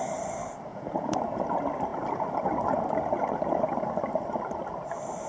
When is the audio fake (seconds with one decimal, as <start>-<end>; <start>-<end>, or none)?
0.7-1.4